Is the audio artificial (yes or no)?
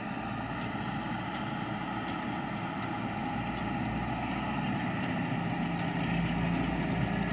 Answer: no